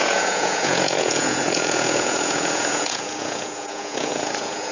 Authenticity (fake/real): fake